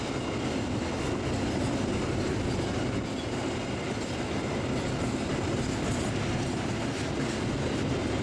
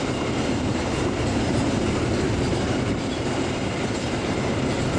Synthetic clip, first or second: second